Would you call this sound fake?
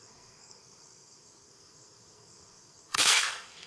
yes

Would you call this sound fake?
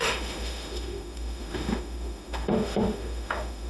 yes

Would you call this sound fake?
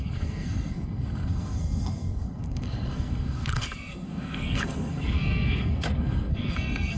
yes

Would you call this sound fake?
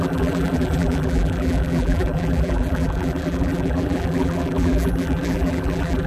yes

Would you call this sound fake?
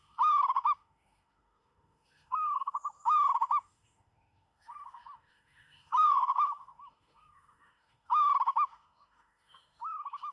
yes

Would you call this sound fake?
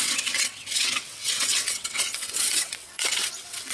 yes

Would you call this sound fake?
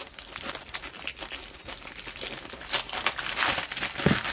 no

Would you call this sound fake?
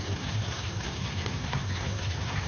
yes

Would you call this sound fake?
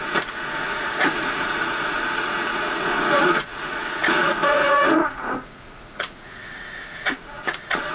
yes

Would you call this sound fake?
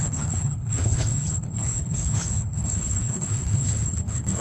yes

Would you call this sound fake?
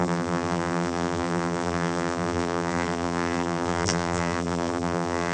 yes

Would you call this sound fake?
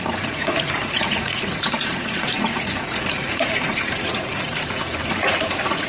yes